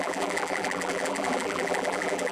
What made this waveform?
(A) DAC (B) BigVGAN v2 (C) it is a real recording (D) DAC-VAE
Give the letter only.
B